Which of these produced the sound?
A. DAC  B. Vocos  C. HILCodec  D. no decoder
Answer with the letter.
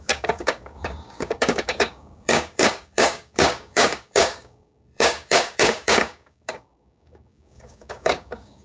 A